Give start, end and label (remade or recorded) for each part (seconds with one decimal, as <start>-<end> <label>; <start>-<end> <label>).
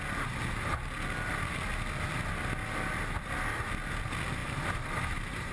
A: 0.0-4.4 recorded; 4.4-5.5 remade